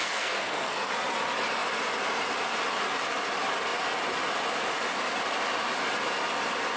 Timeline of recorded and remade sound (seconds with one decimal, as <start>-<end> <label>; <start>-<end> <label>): 0.0-0.9 remade; 0.9-6.8 recorded